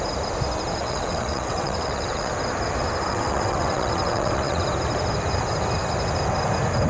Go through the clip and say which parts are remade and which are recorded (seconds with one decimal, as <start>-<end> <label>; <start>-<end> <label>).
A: 0.0-0.8 recorded; 0.8-2.3 remade; 2.3-3.1 recorded; 3.1-4.6 remade; 4.6-6.9 recorded